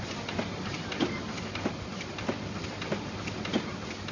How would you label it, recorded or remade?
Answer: recorded